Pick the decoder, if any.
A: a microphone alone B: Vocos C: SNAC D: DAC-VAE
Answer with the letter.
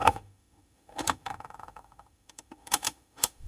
D